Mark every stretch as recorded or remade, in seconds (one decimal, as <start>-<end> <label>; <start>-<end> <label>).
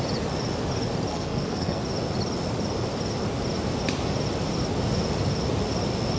0.0-1.1 recorded; 1.1-1.8 remade; 1.8-6.2 recorded